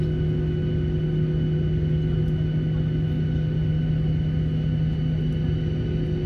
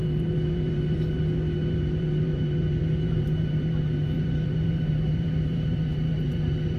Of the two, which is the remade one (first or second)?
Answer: second